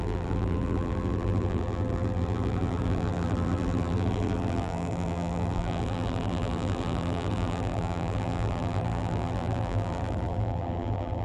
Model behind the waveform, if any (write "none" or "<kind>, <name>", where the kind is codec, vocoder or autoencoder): vocoder, BigVGAN v2